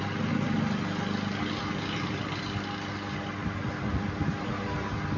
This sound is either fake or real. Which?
real